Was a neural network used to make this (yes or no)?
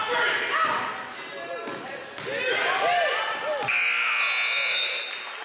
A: no